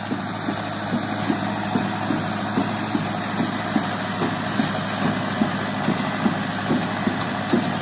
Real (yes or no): yes